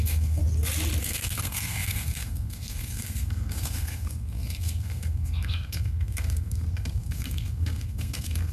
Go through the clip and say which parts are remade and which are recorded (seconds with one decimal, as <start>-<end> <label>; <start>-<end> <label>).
0.0-0.4 remade; 0.4-1.0 recorded; 1.0-8.5 remade